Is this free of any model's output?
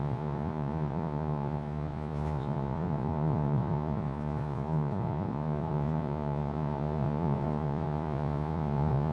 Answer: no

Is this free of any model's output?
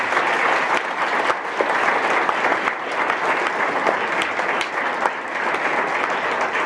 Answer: yes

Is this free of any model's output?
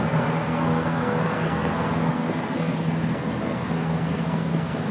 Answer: no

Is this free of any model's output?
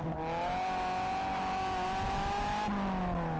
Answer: yes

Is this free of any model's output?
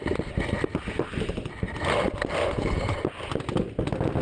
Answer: yes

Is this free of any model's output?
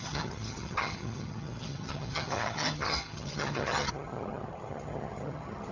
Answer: no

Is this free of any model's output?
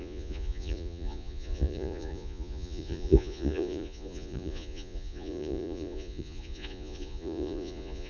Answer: no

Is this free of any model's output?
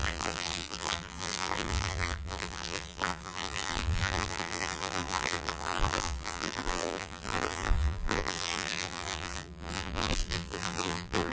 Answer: no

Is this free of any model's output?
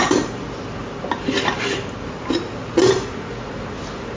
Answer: yes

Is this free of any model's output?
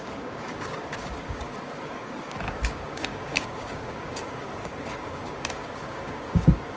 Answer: no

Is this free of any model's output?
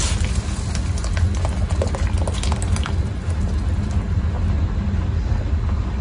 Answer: yes